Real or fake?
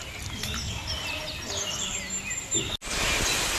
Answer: real